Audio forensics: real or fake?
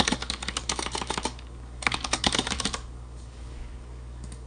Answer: fake